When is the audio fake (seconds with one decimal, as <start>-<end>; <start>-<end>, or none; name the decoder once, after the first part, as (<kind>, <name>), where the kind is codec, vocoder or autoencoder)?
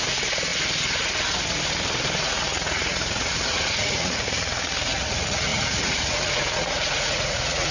0.0-0.5 (vocoder, Vocos); 2.2-7.7